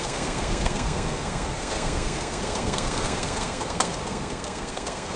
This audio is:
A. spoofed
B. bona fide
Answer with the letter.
A